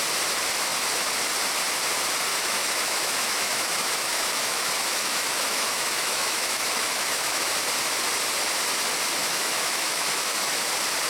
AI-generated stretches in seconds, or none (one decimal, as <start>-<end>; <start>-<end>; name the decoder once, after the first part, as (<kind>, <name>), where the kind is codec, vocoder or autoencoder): 2.3-7.5 (autoencoder, DAC-VAE); 9.2-10.6